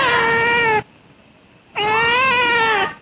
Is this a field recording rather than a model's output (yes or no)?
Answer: yes